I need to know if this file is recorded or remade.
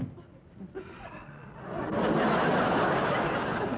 recorded